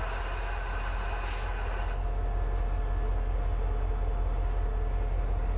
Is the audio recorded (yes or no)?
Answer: yes